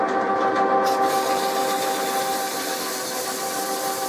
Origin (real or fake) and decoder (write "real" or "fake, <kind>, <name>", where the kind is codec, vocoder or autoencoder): real